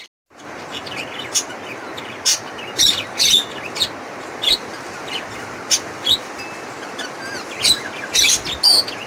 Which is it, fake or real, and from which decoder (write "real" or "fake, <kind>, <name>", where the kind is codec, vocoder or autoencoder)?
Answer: real